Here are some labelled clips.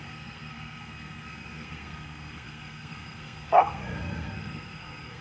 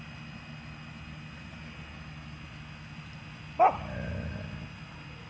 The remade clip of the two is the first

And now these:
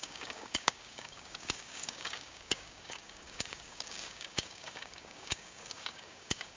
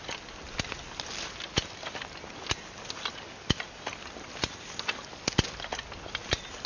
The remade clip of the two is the first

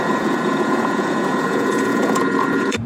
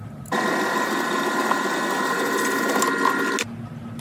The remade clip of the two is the first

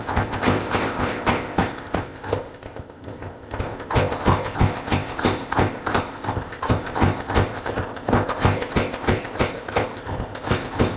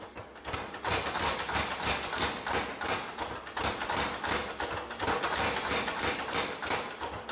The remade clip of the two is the first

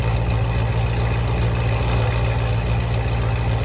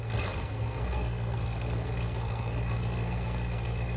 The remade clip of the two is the second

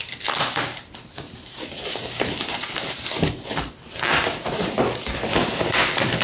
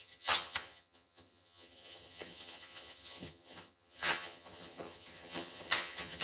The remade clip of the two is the second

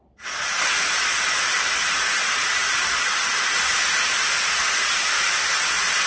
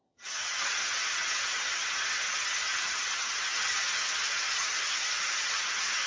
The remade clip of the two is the second